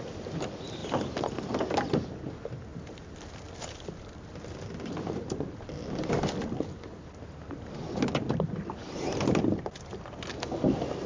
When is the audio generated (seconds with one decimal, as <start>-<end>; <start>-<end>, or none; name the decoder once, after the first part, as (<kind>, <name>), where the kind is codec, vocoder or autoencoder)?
0.8-1.5 (vocoder, BigVGAN v2); 2.7-7.9; 8.8-10.3